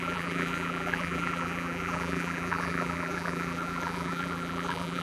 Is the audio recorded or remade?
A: remade